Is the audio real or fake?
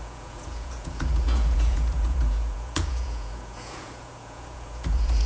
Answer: fake